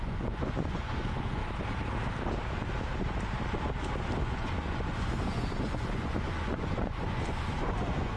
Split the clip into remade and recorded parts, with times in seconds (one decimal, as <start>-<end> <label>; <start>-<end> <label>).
0.0-1.4 remade; 1.4-4.2 recorded; 4.2-8.2 remade